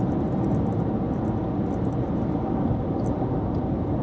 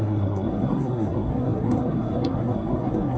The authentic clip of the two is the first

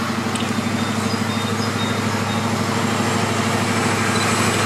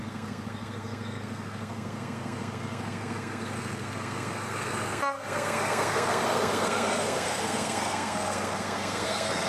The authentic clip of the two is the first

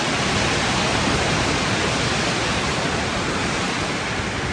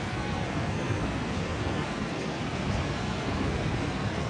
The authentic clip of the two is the first